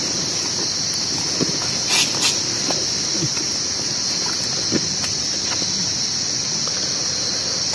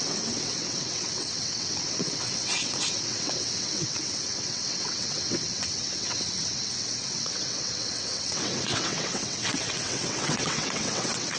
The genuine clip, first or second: first